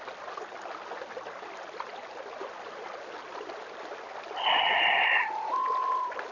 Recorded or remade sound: recorded